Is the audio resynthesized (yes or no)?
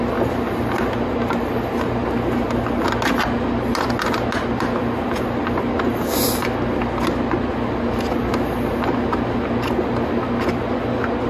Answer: no